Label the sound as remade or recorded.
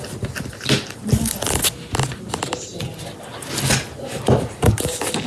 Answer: recorded